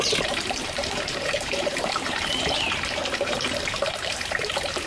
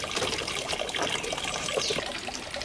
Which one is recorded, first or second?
second